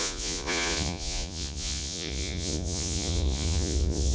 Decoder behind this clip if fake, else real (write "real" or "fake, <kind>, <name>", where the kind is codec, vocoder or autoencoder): fake, vocoder, Vocos